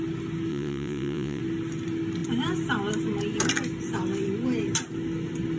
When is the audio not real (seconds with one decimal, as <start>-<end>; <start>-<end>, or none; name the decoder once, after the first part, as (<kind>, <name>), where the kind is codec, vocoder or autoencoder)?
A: 0.5-1.4 (vocoder, WaveNeXt)